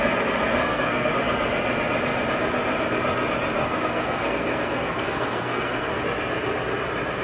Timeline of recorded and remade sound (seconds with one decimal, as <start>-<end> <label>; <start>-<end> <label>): 0.0-0.6 recorded; 0.6-1.1 remade; 1.1-3.6 recorded; 3.6-6.0 remade; 6.0-7.2 recorded